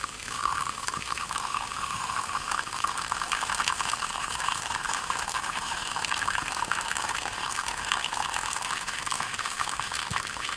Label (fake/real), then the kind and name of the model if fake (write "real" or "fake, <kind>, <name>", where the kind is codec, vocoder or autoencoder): fake, autoencoder, DAC-VAE